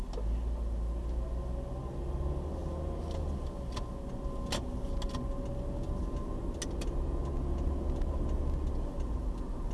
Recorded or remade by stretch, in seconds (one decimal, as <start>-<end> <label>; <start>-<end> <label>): 0.0-9.7 recorded